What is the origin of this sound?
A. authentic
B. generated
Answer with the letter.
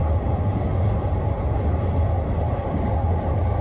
A